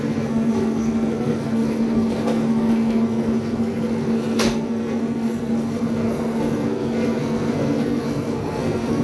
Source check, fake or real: fake